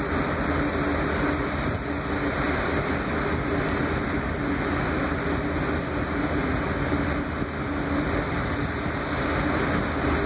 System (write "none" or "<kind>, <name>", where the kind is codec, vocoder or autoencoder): none